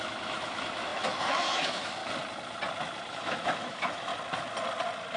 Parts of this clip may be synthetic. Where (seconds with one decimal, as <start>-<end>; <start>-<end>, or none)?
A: 0.0-2.0; 3.1-4.1